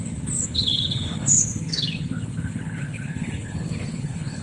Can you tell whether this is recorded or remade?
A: remade